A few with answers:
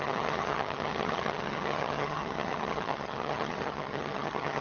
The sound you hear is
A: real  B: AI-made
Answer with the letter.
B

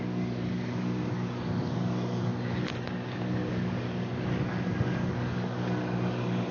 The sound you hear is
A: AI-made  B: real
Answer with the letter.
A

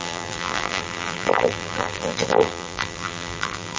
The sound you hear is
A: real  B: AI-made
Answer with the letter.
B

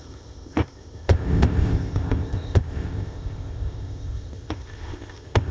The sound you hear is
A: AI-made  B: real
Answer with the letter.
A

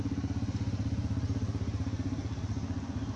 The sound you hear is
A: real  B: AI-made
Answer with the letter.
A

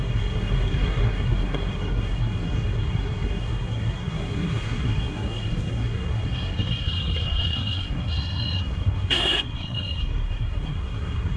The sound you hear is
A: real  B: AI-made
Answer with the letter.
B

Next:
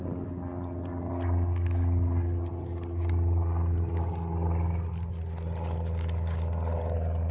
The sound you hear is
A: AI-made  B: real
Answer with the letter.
B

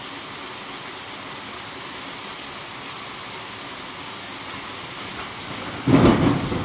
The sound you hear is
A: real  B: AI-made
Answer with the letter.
A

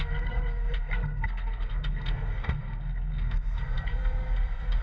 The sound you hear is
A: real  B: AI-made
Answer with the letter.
B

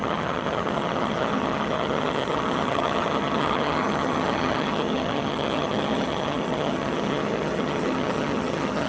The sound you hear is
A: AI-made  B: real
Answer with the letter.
A